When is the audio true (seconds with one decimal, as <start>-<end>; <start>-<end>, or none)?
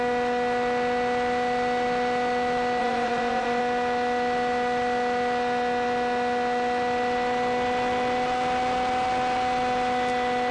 0.0-2.8; 3.6-10.5